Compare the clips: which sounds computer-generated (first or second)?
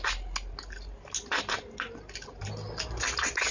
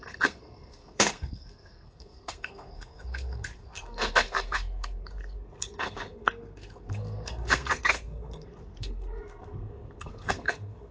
second